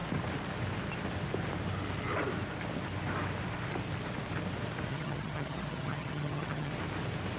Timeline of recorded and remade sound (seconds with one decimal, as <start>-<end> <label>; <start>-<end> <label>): 0.0-4.9 recorded; 4.9-6.7 remade; 6.7-7.4 recorded